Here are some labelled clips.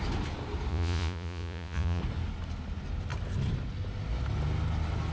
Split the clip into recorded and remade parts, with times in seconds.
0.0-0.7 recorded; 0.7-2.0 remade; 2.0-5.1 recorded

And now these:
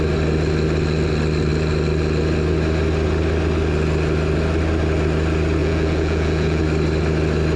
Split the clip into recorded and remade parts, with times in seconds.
0.0-5.6 recorded; 5.6-6.6 remade; 6.6-7.6 recorded

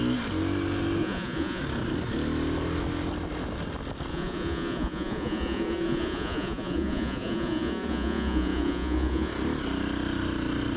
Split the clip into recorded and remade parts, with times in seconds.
0.0-1.0 recorded; 1.0-1.6 remade; 1.6-4.1 recorded; 4.1-9.3 remade; 9.3-10.8 recorded

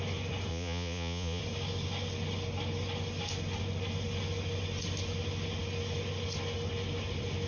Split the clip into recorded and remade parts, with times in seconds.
0.0-0.5 recorded; 0.5-1.4 remade; 1.4-7.5 recorded

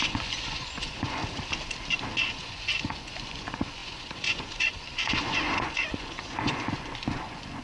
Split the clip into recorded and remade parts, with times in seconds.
0.0-1.2 remade; 1.2-2.2 recorded; 2.2-7.6 remade

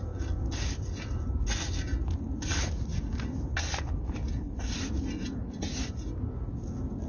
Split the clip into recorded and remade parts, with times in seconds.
0.0-7.1 recorded